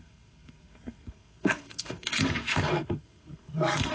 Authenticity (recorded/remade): remade